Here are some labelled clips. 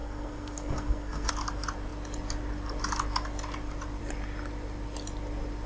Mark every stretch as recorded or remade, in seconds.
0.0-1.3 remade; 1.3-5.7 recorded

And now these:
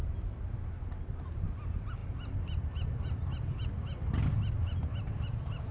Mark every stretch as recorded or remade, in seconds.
0.0-2.0 remade; 2.0-4.5 recorded; 4.5-5.7 remade

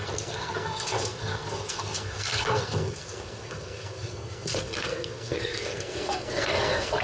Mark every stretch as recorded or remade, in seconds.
0.0-7.0 remade

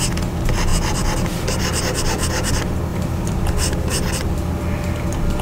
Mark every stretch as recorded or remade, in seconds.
0.0-0.7 recorded; 0.7-1.8 remade; 1.8-2.9 recorded; 2.9-3.9 remade; 3.9-5.4 recorded

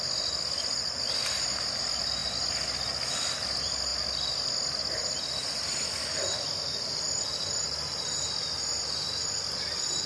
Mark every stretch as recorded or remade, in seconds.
0.0-10.1 recorded

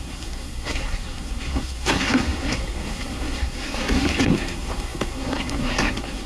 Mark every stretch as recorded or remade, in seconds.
0.0-6.3 remade

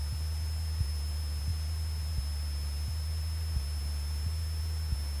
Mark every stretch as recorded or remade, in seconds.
0.0-5.2 recorded